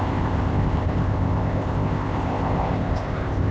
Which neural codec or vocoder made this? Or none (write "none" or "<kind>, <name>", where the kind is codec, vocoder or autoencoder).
codec, ZipCodec